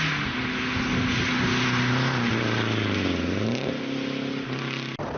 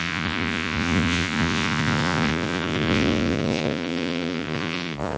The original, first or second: first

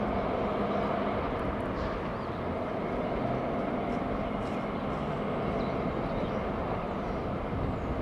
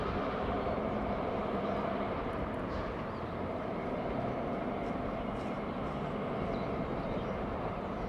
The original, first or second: first